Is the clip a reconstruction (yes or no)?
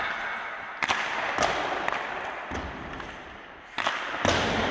no